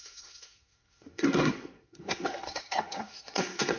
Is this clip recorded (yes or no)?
no